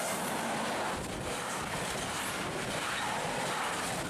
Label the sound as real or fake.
real